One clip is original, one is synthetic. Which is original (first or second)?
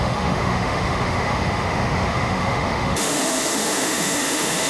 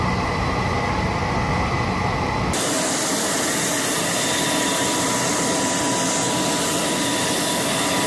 second